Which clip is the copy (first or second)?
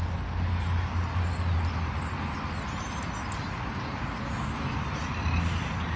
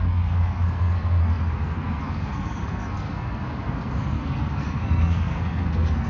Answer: second